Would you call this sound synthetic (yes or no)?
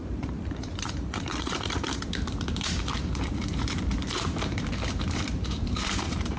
yes